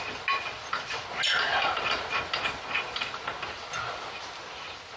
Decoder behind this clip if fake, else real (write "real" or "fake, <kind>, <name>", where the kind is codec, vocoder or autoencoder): real